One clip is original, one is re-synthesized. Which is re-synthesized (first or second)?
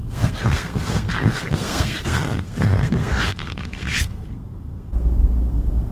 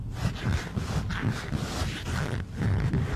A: first